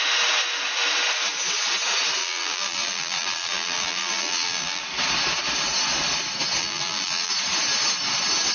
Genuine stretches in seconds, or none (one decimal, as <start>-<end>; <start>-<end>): 0.0-2.2; 4.8-6.6; 7.3-8.5